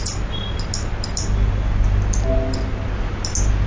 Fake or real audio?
real